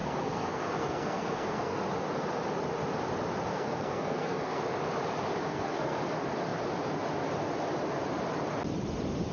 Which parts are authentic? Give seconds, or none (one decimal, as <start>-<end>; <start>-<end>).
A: 1.8-3.5; 4.6-5.5; 6.0-9.3